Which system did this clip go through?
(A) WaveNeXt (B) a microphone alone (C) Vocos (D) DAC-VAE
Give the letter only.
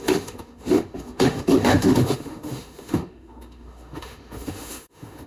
D